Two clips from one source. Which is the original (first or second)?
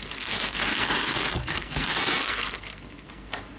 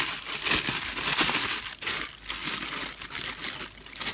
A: second